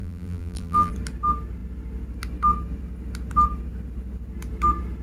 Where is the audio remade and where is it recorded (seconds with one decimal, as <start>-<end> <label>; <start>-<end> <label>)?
0.0-0.9 remade; 0.9-5.0 recorded